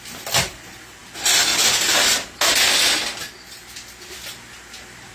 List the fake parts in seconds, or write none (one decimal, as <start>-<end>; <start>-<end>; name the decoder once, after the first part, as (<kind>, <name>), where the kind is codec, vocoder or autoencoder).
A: none